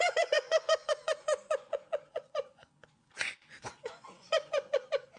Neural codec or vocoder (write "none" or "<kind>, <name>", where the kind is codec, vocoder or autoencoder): vocoder, Vocos